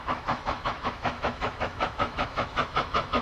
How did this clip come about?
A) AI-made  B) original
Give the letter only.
A